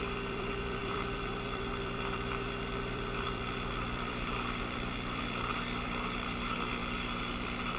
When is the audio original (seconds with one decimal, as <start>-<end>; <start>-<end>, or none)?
6.8-7.8